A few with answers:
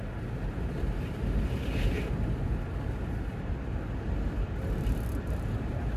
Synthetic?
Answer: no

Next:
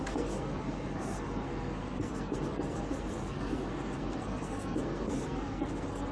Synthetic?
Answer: yes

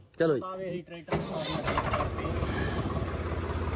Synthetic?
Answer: no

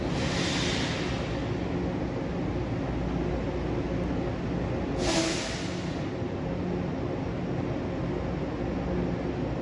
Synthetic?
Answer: no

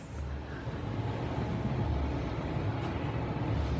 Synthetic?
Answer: no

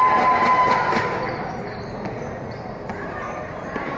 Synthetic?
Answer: no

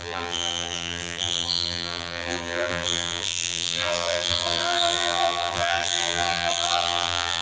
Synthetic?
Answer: yes